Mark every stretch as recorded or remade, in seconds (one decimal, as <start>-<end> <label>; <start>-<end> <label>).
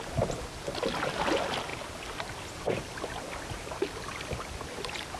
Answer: 0.0-5.2 recorded